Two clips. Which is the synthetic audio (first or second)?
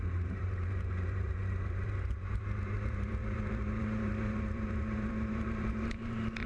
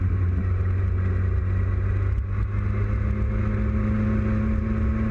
first